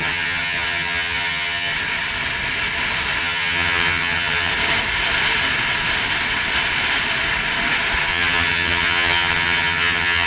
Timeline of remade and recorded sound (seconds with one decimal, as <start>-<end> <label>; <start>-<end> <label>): 0.0-1.7 remade; 1.7-3.2 recorded; 3.2-4.5 remade; 4.5-8.1 recorded; 8.1-10.3 remade